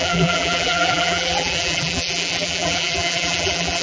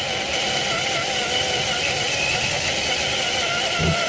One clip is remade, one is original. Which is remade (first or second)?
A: first